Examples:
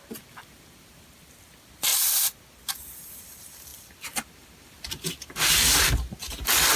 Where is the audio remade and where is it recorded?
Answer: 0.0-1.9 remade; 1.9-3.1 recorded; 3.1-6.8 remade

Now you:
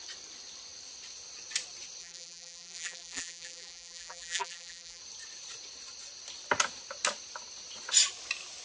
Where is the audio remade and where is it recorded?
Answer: 0.0-2.0 recorded; 2.0-5.0 remade; 5.0-8.6 recorded